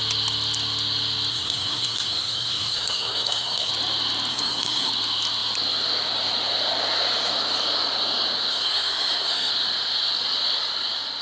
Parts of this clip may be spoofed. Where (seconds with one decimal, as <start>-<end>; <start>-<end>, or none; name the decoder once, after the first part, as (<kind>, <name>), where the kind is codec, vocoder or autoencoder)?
1.3-3.7 (codec, SNAC); 4.3-4.9; 8.5-9.5